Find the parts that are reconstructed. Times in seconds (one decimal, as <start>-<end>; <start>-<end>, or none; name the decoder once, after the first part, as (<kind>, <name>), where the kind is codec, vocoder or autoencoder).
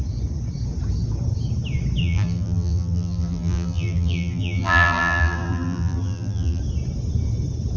2.0-6.6 (vocoder, BigVGAN v2)